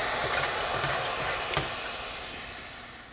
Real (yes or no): yes